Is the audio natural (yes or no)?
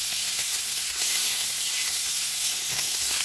no